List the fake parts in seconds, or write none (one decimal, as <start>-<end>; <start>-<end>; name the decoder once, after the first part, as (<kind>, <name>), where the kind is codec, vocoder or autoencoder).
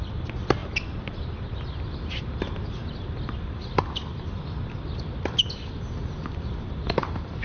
none